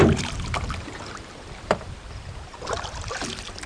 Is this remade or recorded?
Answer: recorded